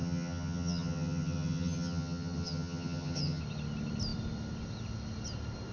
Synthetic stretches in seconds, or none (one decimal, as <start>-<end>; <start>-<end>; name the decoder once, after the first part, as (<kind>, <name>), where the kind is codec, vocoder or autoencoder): 0.0-3.4 (vocoder, HiFi-GAN)